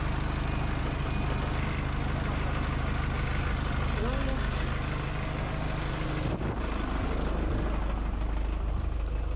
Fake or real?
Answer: real